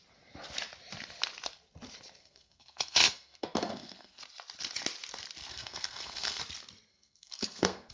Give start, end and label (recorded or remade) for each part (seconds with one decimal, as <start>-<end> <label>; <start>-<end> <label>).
0.0-2.2 recorded; 2.2-4.2 remade; 4.2-5.5 recorded; 5.5-6.4 remade; 6.4-6.9 recorded; 6.9-7.9 remade